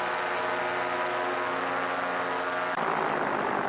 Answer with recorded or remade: recorded